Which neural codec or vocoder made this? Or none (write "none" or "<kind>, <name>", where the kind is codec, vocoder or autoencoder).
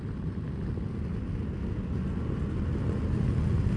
none